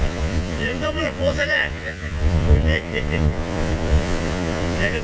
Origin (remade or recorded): remade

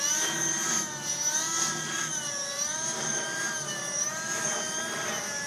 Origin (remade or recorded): remade